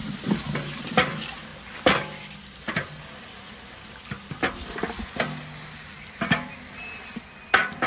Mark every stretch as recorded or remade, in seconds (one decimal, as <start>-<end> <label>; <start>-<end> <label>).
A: 0.0-7.9 recorded